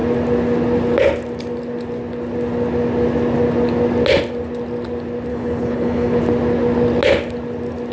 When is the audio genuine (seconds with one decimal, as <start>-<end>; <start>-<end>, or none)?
0.0-5.3; 6.2-7.9